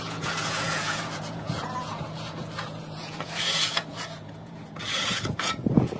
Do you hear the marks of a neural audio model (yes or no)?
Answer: yes